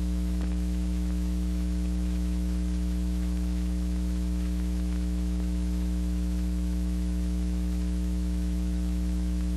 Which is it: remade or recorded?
remade